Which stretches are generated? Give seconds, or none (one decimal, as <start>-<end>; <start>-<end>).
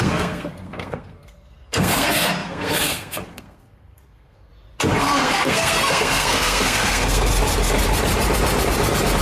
0.0-4.5; 5.0-7.3